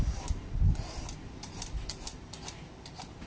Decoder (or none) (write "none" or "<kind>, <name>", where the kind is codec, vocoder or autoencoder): none